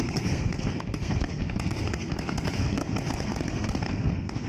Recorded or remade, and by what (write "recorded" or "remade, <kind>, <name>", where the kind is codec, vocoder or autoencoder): remade, codec, SNAC